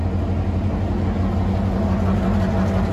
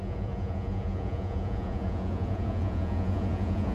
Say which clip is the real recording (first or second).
first